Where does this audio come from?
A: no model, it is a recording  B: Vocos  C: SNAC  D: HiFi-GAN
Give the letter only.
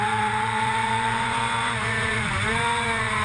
B